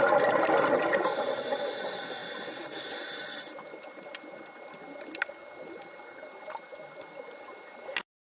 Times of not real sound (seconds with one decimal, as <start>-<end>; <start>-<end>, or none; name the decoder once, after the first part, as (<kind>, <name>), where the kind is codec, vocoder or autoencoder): 2.2-3.7 (vocoder, BigVGAN v2)